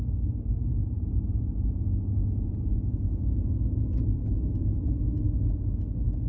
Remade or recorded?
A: recorded